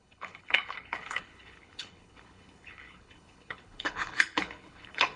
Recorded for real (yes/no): no